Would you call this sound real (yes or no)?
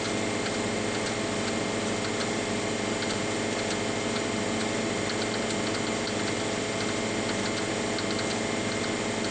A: yes